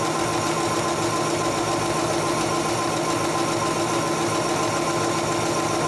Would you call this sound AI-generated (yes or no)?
no